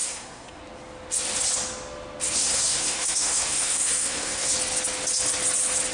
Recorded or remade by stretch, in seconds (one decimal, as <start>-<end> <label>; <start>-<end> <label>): 0.0-0.6 remade; 0.6-2.4 recorded; 2.4-4.5 remade; 4.5-5.9 recorded